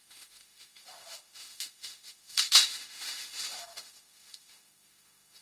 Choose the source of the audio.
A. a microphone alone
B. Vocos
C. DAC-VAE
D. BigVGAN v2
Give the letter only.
C